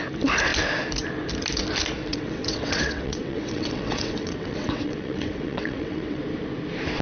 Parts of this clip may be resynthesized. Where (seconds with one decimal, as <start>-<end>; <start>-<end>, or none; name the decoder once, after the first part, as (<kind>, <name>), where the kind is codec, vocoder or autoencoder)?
2.1-6.2 (vocoder, WaveNeXt)

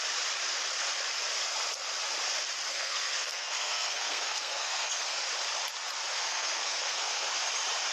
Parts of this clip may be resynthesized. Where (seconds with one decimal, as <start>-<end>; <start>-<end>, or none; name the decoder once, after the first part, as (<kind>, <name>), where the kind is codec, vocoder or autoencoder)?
2.7-5.2 (codec, SNAC); 6.1-7.3

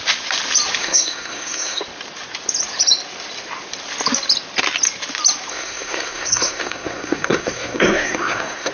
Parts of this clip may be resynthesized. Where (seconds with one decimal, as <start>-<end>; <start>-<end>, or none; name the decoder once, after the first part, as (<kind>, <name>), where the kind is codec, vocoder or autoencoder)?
0.8-1.8 (codec, SNAC); 5.5-8.7

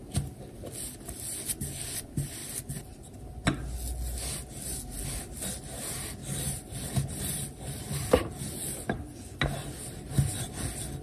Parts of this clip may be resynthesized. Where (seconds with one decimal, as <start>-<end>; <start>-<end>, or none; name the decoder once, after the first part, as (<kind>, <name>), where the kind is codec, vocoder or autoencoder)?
2.4-3.3 (vocoder, BigVGAN v2); 6.2-7.2

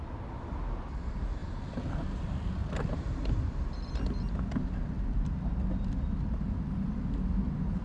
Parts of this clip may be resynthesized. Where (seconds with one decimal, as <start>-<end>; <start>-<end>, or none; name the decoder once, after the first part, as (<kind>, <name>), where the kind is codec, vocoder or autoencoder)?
none